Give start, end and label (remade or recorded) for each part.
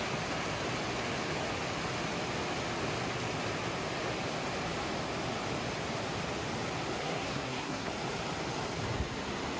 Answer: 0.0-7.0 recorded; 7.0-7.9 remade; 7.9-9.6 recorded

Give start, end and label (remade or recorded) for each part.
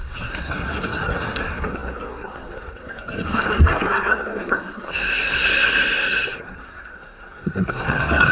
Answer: 0.0-8.3 remade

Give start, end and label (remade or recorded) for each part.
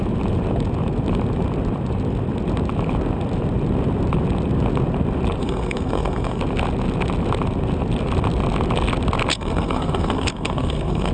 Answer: 0.0-5.4 recorded; 5.4-6.4 remade; 6.4-9.3 recorded; 9.3-11.1 remade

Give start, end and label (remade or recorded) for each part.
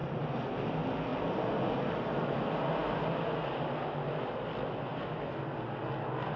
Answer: 0.0-6.4 recorded